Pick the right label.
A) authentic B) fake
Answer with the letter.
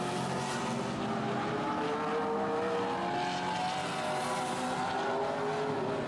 A